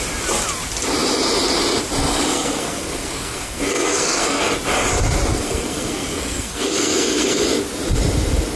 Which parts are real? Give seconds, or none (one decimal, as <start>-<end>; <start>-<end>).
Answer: 0.0-2.3; 4.4-5.3; 7.4-8.6

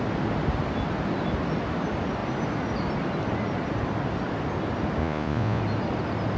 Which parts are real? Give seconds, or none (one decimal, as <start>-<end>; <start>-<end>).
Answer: 0.0-5.0; 5.6-6.4

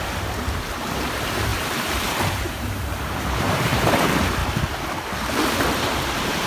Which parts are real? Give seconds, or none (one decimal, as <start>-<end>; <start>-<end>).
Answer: 4.4-5.9

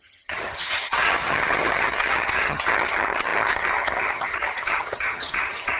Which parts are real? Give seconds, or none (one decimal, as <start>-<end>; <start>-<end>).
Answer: none

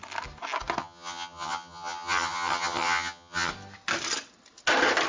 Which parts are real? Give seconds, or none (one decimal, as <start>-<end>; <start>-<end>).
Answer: 0.0-0.8; 3.5-5.1

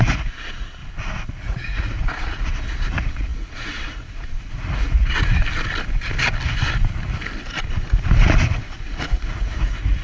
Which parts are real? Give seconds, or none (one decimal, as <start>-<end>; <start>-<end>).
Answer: 0.8-1.4; 5.4-8.7

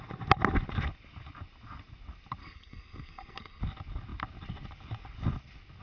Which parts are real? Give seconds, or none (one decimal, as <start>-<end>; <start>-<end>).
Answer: 0.0-2.4; 3.6-5.8

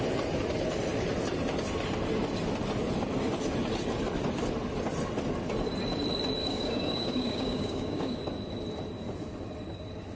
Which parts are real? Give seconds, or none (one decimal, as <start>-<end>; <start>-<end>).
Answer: 0.0-6.4; 8.2-10.2